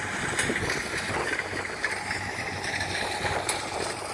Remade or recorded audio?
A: recorded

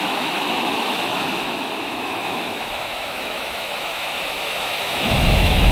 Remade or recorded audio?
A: remade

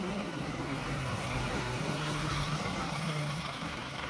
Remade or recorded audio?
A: remade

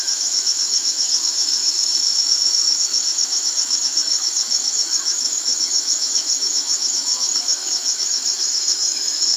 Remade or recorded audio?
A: remade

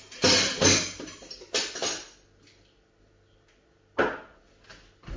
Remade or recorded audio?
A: recorded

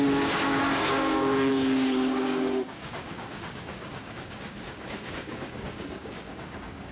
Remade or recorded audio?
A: remade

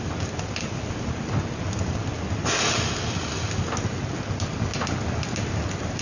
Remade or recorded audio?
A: recorded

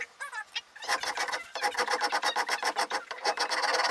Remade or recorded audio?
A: recorded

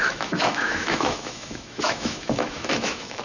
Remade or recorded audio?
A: remade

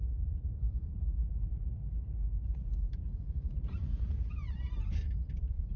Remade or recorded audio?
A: remade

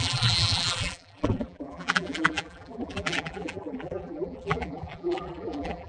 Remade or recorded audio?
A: remade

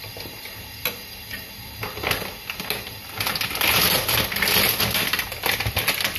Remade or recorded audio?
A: recorded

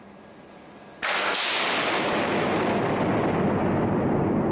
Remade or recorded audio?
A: recorded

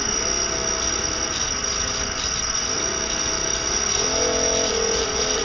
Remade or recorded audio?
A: recorded